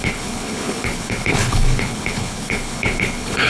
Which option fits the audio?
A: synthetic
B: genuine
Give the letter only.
A